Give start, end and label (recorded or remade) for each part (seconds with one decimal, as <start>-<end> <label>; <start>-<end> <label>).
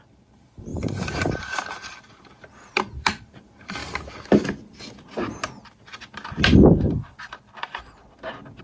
0.0-3.8 remade; 3.8-8.6 recorded